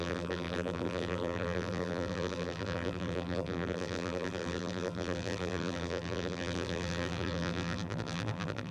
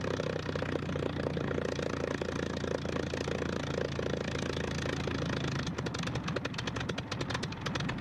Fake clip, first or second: first